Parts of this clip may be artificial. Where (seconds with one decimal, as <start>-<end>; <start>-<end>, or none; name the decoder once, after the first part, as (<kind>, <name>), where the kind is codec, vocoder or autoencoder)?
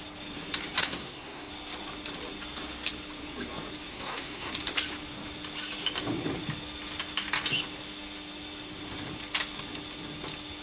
0.8-1.5 (codec, SNAC); 3.9-4.5